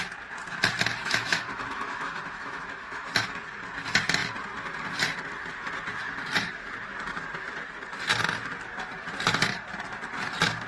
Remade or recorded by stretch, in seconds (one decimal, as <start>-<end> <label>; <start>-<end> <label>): 0.0-1.0 recorded; 1.0-3.1 remade; 3.1-10.7 recorded